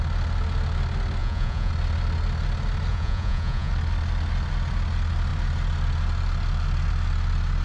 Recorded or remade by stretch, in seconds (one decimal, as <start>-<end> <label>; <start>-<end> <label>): 0.0-1.2 recorded; 1.2-1.7 remade; 1.7-2.9 recorded; 2.9-3.7 remade; 3.7-7.6 recorded